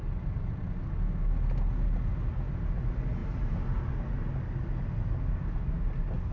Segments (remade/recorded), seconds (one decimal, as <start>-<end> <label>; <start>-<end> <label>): 0.0-6.3 recorded